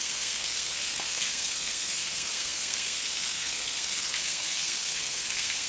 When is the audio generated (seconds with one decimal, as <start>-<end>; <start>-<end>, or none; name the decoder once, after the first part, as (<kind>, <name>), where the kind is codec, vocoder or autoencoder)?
0.0-5.7 (codec, SNAC)